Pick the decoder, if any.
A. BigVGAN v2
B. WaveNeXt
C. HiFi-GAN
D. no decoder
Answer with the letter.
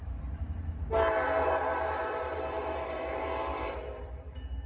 A